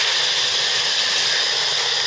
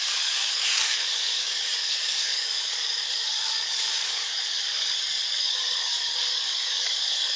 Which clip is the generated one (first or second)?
second